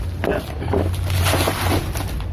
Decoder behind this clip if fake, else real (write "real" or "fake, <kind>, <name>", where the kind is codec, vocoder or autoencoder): real